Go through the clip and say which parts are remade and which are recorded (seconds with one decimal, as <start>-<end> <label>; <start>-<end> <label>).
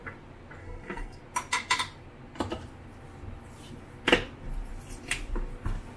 0.0-0.6 recorded; 0.6-1.2 remade; 1.2-6.0 recorded